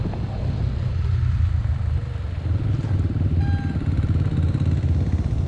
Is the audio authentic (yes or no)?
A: yes